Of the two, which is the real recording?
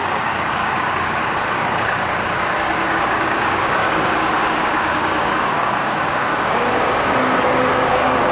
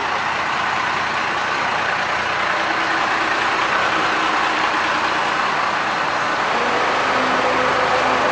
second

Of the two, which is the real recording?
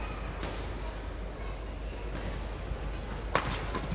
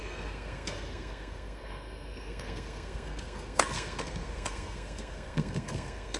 first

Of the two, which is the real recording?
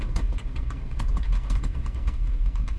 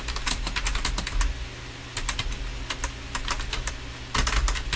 second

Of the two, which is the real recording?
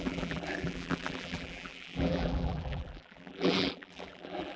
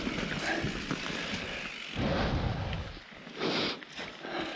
second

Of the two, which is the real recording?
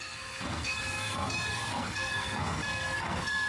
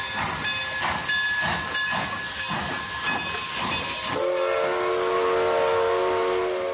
second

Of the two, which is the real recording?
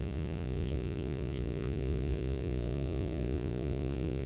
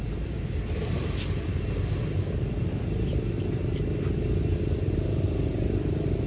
second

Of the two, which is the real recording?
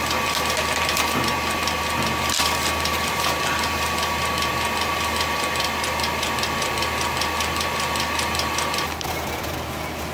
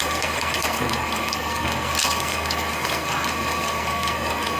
first